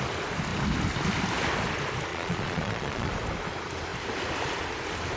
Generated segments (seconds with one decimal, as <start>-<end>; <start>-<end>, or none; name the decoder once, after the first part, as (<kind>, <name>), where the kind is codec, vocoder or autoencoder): 2.1-3.1 (vocoder, Vocos)